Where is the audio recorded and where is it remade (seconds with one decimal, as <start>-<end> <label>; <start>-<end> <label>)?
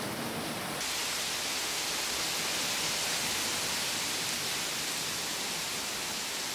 0.0-6.5 recorded